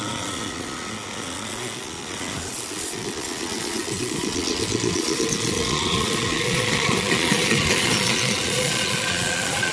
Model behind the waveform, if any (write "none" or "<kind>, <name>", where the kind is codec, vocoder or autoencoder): vocoder, Vocos